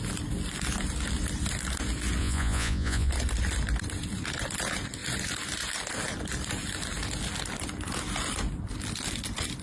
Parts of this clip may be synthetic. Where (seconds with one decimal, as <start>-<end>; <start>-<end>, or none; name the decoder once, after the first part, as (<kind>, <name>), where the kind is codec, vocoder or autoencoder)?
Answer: 2.2-3.1 (vocoder, Vocos)